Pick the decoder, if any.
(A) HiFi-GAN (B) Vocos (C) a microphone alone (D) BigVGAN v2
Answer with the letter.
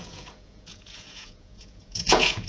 B